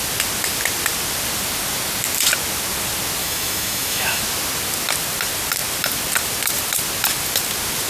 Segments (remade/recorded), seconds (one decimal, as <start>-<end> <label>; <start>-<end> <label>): 0.0-3.2 recorded; 3.2-4.2 remade; 4.2-7.9 recorded